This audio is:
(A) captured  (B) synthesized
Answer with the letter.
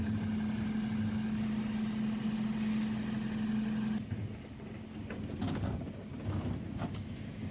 A